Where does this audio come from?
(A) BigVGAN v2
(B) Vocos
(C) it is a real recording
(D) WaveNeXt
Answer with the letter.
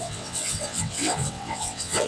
D